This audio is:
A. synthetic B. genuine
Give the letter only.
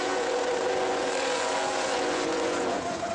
A